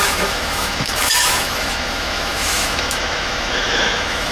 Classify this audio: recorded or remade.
remade